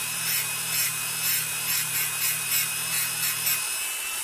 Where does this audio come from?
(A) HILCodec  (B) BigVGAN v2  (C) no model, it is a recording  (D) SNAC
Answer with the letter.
B